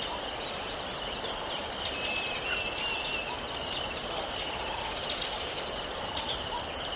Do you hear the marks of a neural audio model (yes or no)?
no